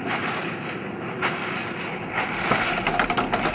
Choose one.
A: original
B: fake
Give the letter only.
A